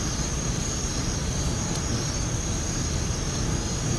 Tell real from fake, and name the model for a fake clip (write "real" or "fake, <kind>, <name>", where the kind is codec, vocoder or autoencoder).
real